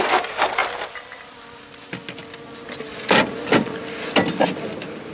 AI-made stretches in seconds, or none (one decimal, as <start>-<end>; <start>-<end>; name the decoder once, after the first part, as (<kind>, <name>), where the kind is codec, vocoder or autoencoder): none